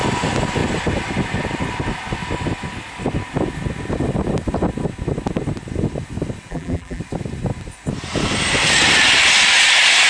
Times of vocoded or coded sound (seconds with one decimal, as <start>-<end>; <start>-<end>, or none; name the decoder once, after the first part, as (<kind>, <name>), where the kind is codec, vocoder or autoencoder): 6.5-7.0 (vocoder, BigVGAN v2)